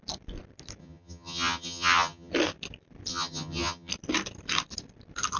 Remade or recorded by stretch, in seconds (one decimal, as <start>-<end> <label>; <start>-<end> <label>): 0.0-0.8 recorded; 0.8-2.3 remade; 2.3-3.1 recorded; 3.1-3.9 remade; 3.9-5.4 recorded